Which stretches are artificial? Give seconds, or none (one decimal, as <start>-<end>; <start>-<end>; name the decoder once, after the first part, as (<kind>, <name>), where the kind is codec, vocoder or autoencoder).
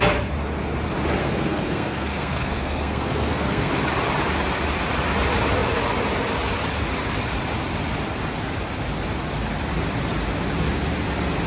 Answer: 1.2-3.7 (codec, SNAC)